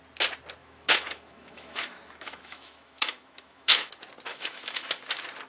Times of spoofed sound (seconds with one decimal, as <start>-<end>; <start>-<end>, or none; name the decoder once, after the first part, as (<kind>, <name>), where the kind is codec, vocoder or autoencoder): 0.6-3.9 (autoencoder, DAC-VAE); 4.3-4.9